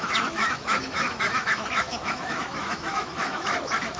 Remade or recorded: remade